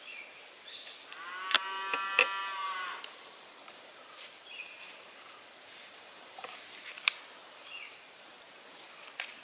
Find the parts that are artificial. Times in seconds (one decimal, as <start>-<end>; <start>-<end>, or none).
2.4-6.8; 7.4-8.9